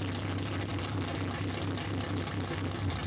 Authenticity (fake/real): real